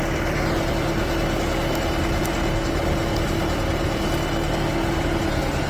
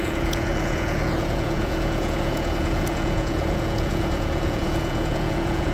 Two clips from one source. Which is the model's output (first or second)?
second